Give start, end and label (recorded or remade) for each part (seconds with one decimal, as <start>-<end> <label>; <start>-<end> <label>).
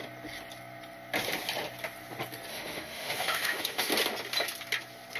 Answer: 0.0-2.5 recorded; 2.5-3.9 remade; 3.9-5.2 recorded